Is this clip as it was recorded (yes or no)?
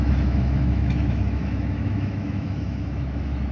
no